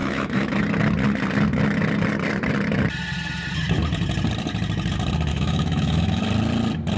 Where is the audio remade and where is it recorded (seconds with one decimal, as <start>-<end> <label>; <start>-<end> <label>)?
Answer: 0.0-0.5 remade; 0.5-5.3 recorded; 5.3-6.2 remade; 6.2-7.0 recorded